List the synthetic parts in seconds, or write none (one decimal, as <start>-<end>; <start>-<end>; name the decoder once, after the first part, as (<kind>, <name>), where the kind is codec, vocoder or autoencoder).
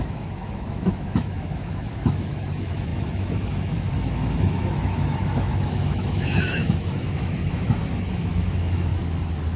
0.0-8.9 (autoencoder, DAC-VAE)